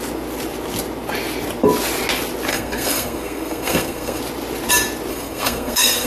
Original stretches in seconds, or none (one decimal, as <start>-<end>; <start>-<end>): 0.0-2.5; 4.2-5.1